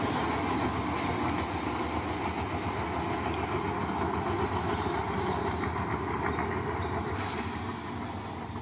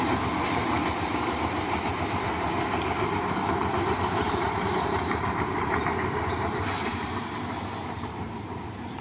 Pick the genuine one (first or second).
first